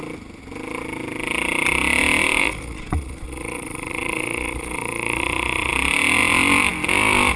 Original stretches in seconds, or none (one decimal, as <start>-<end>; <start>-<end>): 0.0-2.4; 5.7-7.4